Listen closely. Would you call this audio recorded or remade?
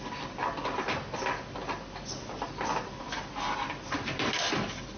recorded